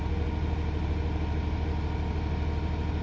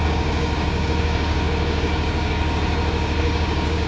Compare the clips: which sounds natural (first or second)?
first